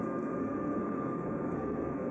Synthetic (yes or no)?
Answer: yes